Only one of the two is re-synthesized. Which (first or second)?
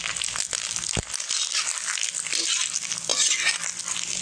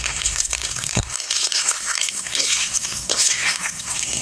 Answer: second